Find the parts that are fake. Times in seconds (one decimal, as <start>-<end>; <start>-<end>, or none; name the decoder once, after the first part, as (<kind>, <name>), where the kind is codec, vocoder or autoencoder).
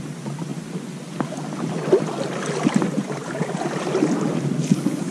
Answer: none